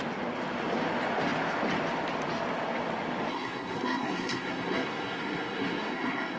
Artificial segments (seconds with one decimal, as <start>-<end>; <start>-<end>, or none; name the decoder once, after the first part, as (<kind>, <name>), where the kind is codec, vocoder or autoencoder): 3.3-6.4 (codec, SNAC)